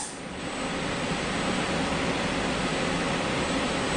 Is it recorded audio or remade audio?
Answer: recorded